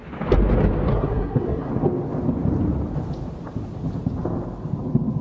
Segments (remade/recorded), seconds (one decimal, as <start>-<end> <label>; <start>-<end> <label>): 0.0-0.9 recorded; 0.9-1.7 remade; 1.7-5.2 recorded